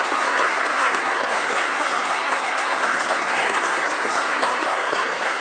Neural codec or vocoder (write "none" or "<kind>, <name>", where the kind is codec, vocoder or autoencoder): codec, SNAC